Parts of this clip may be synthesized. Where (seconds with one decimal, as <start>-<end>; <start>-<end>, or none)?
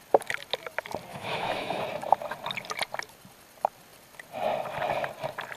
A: 1.1-1.8